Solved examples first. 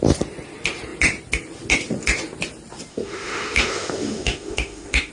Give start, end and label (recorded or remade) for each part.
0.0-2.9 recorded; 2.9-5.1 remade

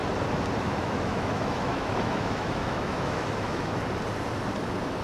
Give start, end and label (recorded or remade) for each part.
0.0-0.6 recorded; 0.6-3.8 remade; 3.8-5.0 recorded

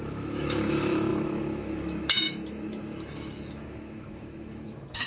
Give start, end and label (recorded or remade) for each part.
0.0-5.1 remade

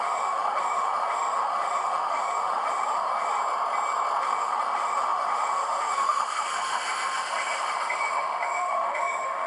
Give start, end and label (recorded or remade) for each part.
0.0-3.4 remade; 3.4-4.2 recorded; 4.2-9.5 remade

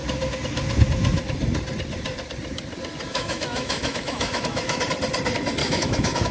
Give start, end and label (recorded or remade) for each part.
0.0-3.1 recorded; 3.1-4.8 remade; 4.8-5.6 recorded; 5.6-6.3 remade

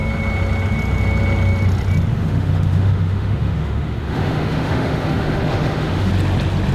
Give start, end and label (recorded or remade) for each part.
0.0-2.1 recorded; 2.1-6.1 remade; 6.1-6.7 recorded

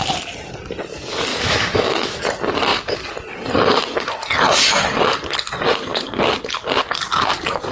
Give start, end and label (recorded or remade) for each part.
0.0-1.3 recorded; 1.3-2.2 remade; 2.2-7.7 recorded